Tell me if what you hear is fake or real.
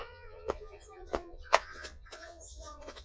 fake